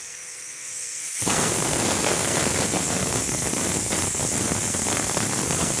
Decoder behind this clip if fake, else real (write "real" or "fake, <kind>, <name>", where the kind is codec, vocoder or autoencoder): fake, codec, SNAC